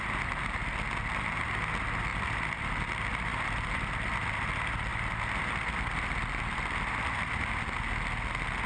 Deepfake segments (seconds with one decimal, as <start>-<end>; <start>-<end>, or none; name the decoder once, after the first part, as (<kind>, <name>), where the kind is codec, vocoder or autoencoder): 2.1-2.8 (vocoder, BigVGAN v2); 3.3-4.3; 4.9-8.0

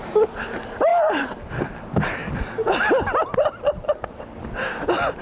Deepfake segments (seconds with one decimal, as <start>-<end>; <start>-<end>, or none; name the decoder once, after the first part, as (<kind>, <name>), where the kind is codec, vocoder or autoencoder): 0.0-2.2 (vocoder, BigVGAN v2)

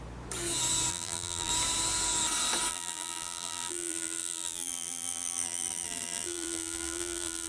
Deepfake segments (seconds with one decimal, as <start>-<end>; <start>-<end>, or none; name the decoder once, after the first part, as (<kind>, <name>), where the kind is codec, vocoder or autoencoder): 0.9-1.5 (vocoder, BigVGAN v2); 2.7-7.5